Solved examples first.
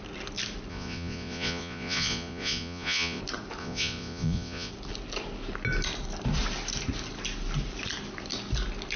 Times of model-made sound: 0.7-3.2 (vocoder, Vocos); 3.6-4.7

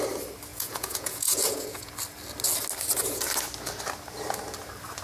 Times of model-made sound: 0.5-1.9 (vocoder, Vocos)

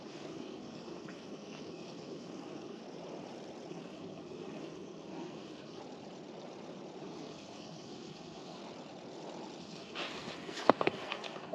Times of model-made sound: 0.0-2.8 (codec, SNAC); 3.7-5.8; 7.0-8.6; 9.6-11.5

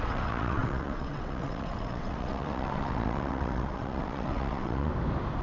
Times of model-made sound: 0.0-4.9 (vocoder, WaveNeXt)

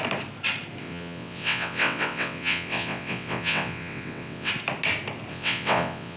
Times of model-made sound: 0.8-4.5 (vocoder, WaveNeXt); 5.3-6.2

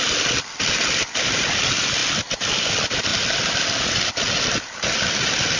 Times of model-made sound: none